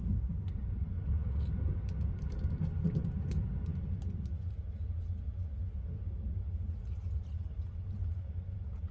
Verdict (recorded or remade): recorded